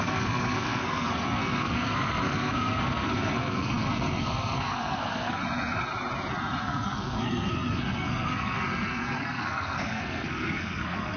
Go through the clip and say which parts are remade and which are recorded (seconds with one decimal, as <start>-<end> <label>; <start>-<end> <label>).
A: 0.0-5.4 remade; 5.4-6.6 recorded; 6.6-11.2 remade

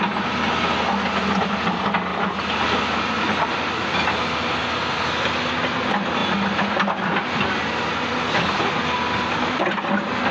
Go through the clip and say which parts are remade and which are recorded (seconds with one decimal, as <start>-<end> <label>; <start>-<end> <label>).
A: 0.0-10.3 recorded